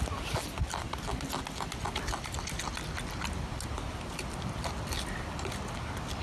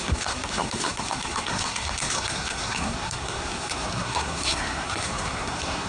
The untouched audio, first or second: first